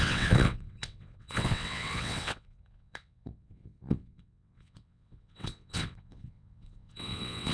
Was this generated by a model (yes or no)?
yes